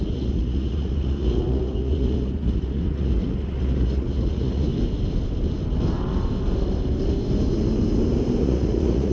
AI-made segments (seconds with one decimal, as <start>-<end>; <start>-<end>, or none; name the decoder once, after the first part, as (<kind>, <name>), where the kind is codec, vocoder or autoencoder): 0.0-4.7 (vocoder, Vocos); 8.4-9.1